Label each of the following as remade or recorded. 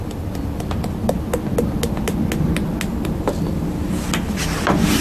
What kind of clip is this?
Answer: recorded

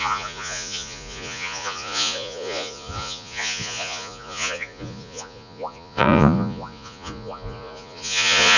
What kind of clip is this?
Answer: remade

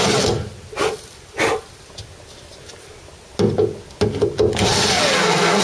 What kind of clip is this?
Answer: recorded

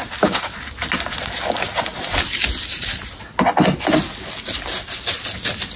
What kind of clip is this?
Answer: recorded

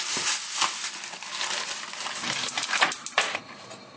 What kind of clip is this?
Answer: recorded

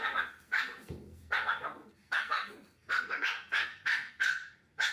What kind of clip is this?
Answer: remade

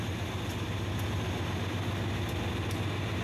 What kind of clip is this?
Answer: recorded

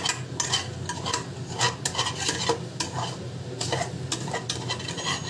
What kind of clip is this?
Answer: recorded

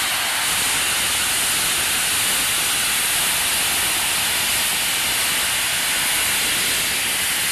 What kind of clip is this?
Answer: recorded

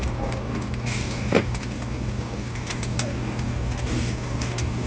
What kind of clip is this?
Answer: remade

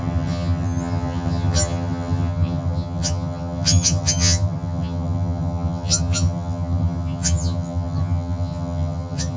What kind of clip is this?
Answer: remade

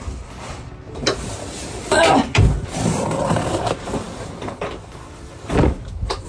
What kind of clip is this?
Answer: remade